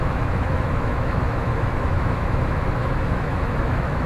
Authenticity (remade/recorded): remade